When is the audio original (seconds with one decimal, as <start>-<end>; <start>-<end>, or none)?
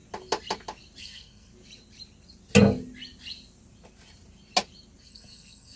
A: 0.0-1.0; 1.5-5.0